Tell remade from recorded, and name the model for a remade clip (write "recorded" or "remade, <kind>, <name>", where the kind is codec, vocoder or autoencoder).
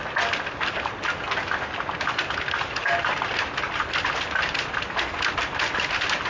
recorded